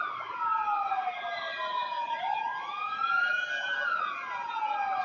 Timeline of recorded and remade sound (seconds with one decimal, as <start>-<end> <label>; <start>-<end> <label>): 0.0-5.0 recorded